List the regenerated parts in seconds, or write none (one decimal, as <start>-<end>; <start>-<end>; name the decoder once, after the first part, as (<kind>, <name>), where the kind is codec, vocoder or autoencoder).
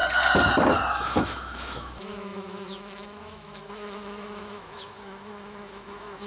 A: 0.9-6.3 (autoencoder, DAC-VAE)